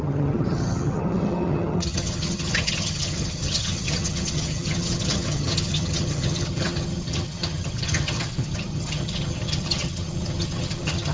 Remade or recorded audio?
remade